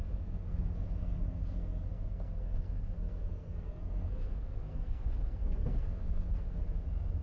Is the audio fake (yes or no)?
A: yes